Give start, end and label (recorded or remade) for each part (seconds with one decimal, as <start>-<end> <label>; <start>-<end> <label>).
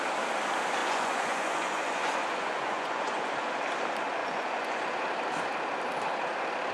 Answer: 0.0-0.8 recorded; 0.8-3.3 remade; 3.3-4.2 recorded; 4.2-4.8 remade; 4.8-6.7 recorded